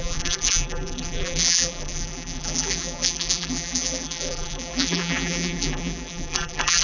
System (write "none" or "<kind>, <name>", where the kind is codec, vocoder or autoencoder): vocoder, BigVGAN v2